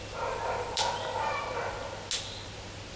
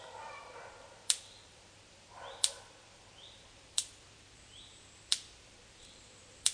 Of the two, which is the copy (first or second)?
second